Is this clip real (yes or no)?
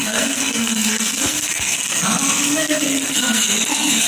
no